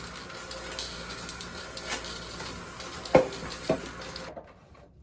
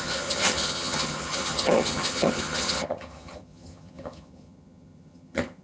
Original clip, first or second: first